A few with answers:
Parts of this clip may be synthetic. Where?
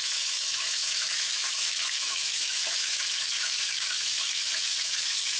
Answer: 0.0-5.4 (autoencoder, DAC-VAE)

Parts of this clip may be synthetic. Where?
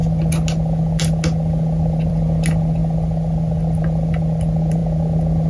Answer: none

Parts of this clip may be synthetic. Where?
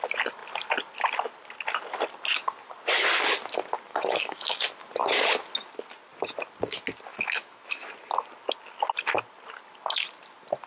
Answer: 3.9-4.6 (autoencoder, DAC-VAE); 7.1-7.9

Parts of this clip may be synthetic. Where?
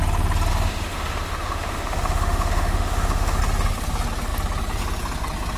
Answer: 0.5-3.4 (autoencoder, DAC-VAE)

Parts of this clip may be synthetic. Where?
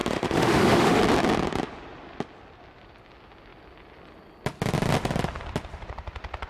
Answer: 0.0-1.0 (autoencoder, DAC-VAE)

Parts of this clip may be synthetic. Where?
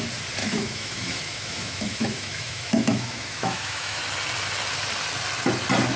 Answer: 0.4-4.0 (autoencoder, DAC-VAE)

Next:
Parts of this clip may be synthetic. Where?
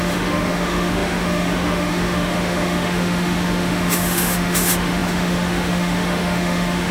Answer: 0.0-6.9 (autoencoder, DAC-VAE)